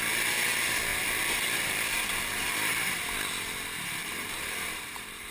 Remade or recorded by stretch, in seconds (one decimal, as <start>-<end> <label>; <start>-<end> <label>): 0.0-0.9 recorded; 0.9-3.0 remade; 3.0-4.0 recorded; 4.0-5.3 remade